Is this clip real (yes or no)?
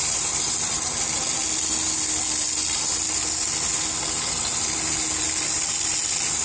yes